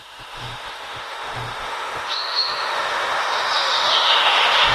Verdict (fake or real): fake